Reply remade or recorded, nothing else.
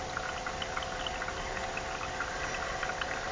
recorded